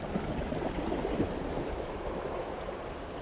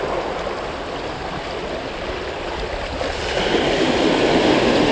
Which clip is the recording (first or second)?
second